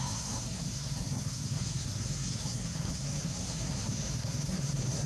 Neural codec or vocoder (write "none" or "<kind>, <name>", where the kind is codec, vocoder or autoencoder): codec, SNAC